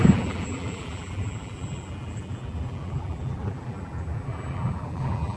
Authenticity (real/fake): fake